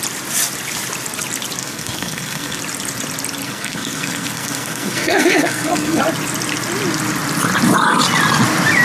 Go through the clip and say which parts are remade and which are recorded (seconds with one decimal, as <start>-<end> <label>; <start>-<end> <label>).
0.0-1.6 recorded; 1.6-2.6 remade; 2.6-3.4 recorded; 3.4-6.0 remade; 6.0-8.8 recorded